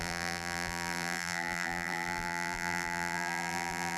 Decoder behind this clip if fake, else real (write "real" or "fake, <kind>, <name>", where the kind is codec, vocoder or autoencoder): fake, vocoder, BigVGAN v2